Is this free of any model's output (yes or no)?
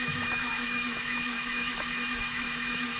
no